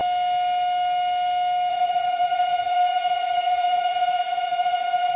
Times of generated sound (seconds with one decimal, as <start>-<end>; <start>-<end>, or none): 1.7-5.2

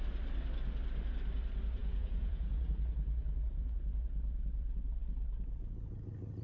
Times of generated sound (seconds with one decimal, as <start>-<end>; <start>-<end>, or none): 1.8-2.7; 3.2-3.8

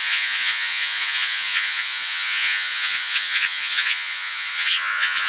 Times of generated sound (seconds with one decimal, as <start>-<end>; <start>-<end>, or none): 0.0-5.3